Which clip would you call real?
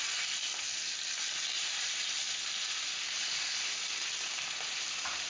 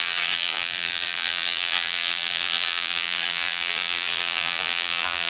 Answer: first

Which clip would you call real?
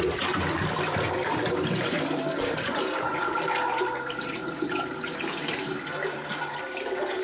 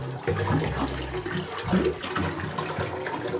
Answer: second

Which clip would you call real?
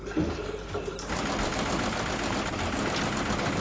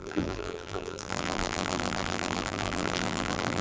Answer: first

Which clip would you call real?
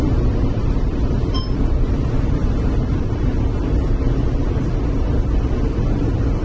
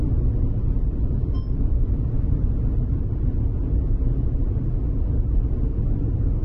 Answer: second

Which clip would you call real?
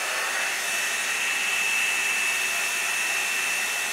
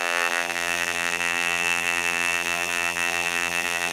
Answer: first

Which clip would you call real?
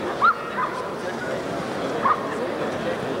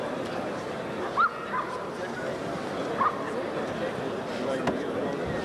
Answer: first